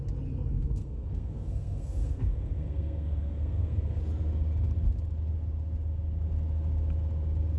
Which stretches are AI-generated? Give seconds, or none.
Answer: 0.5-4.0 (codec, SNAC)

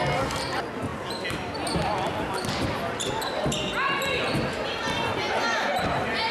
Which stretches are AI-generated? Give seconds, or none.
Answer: none

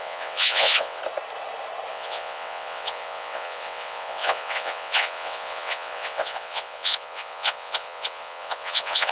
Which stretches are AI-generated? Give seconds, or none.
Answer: 0.0-1.0 (vocoder, WaveNeXt); 1.9-9.1

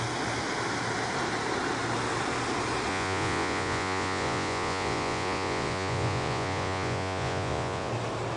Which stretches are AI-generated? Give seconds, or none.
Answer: 2.9-7.9 (vocoder, Vocos)

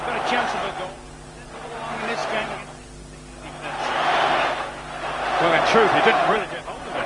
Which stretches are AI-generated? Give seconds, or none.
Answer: 0.6-1.8 (vocoder, BigVGAN v2); 6.2-7.1

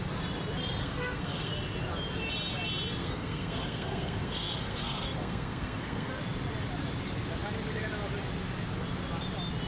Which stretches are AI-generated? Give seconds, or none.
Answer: 0.8-1.5 (codec, SNAC); 3.0-6.1

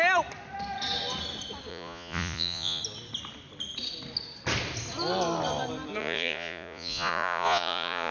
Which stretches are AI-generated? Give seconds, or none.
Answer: 1.7-2.8 (vocoder, Vocos); 6.0-8.1

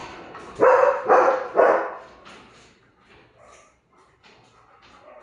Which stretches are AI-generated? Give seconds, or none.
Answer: 0.0-2.2 (vocoder, BigVGAN v2)